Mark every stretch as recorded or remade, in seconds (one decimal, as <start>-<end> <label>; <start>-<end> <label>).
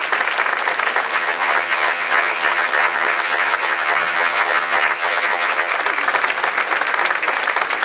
0.0-1.1 recorded; 1.1-5.7 remade; 5.7-7.8 recorded